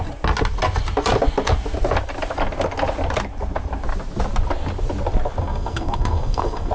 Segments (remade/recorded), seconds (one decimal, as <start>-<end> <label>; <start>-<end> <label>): 0.0-5.4 recorded; 5.4-6.7 remade